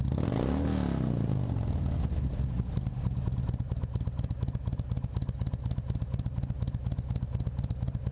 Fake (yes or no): no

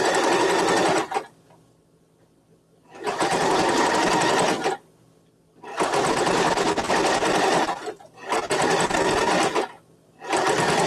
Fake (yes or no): no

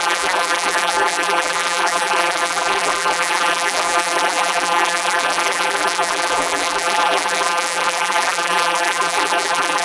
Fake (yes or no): yes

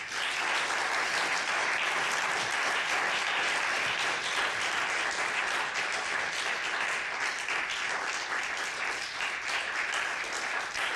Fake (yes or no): no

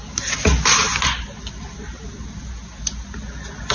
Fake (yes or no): no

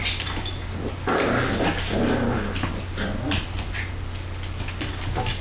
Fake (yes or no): no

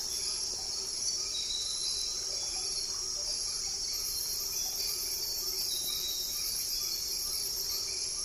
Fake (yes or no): yes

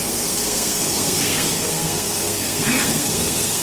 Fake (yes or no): yes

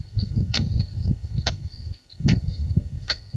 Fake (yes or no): yes